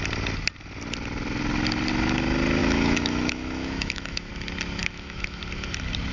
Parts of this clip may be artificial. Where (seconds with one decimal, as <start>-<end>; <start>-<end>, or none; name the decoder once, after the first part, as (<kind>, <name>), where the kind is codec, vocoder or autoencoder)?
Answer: 2.6-4.3 (autoencoder, DAC-VAE); 4.8-5.4